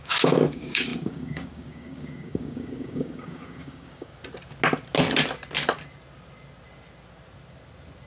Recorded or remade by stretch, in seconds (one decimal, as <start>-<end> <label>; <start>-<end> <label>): 0.0-4.1 remade; 4.1-8.1 recorded

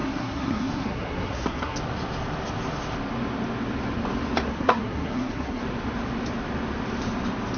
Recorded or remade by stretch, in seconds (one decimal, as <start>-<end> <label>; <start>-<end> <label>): 0.0-1.8 remade; 1.8-4.5 recorded; 4.5-5.6 remade; 5.6-7.6 recorded